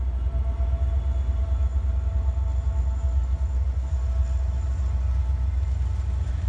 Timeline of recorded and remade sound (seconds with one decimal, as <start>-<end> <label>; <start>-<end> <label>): 0.0-6.5 recorded

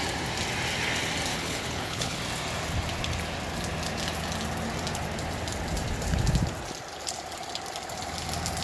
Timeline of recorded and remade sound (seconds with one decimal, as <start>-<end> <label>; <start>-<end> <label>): 0.0-1.3 recorded; 1.3-2.2 remade; 2.2-8.6 recorded

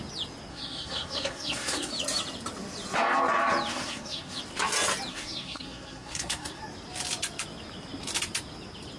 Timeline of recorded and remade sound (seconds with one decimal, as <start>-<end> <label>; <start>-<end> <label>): 0.0-0.5 recorded; 0.5-1.9 remade; 1.9-3.7 recorded; 3.7-4.4 remade; 4.4-5.1 recorded; 5.1-6.6 remade; 6.6-9.0 recorded

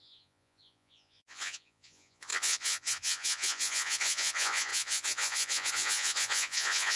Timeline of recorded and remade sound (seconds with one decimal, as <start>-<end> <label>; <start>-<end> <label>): 0.0-7.0 remade

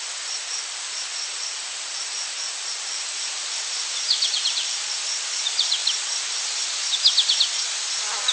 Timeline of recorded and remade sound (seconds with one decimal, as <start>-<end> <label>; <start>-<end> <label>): 0.0-1.1 recorded; 1.1-4.9 remade; 4.9-8.3 recorded

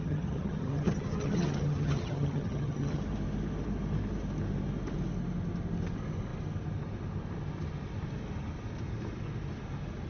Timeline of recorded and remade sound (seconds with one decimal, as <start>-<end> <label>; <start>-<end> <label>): 0.0-3.0 remade; 3.0-10.1 recorded

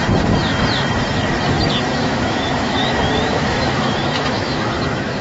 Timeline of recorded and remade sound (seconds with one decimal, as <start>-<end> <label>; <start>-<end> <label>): 0.0-1.9 recorded; 1.9-5.2 remade

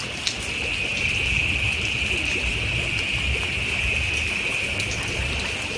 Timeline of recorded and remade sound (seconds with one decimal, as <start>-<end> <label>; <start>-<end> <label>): 0.0-5.8 recorded